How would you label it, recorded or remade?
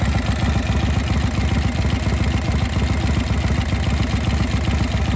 recorded